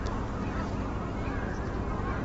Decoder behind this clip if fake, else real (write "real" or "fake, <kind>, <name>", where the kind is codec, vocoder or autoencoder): real